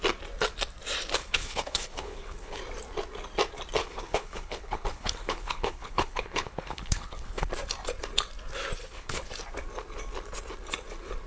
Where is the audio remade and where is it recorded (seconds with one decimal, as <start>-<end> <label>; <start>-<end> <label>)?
0.0-1.2 recorded; 1.2-2.6 remade; 2.6-3.8 recorded; 3.8-7.5 remade; 7.5-8.8 recorded; 8.8-9.3 remade; 9.3-11.3 recorded